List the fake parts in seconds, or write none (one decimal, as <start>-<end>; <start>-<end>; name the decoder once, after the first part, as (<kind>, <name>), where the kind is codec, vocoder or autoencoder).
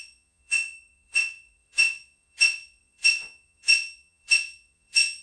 0.0-5.2 (vocoder, Vocos)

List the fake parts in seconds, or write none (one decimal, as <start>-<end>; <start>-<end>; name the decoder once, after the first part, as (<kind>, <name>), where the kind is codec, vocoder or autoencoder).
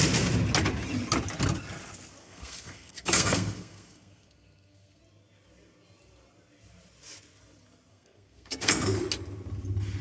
2.2-5.0 (codec, SNAC); 7.9-9.0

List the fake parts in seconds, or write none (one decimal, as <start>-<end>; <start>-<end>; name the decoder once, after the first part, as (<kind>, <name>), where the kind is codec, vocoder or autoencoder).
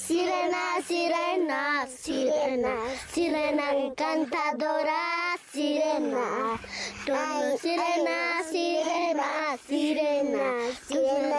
2.0-2.5 (codec, HILCodec); 8.8-9.4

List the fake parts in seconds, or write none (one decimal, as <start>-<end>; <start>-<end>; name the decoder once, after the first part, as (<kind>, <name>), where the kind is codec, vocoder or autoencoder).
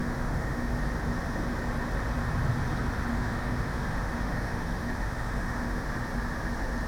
0.0-0.7 (autoencoder, DAC-VAE); 3.1-5.8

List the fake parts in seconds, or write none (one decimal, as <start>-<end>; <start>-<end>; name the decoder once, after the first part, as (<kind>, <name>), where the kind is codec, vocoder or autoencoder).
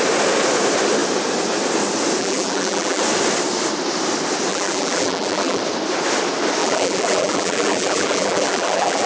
2.2-3.0 (vocoder, BigVGAN v2); 4.5-5.6; 6.6-9.1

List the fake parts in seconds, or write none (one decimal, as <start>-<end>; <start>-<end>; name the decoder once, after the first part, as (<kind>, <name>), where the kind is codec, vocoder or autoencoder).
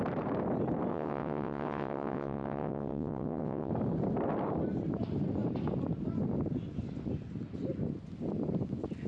0.9-3.7 (vocoder, WaveNeXt)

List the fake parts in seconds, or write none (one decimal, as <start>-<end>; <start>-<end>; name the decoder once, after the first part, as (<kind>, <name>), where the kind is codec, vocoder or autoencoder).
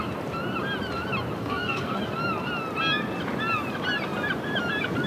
1.4-2.0 (codec, SNAC)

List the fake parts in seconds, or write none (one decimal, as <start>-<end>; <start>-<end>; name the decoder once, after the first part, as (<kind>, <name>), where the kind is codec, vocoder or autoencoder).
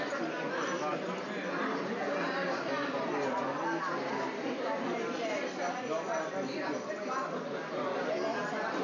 none